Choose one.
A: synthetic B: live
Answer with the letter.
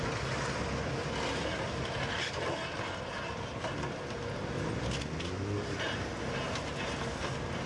B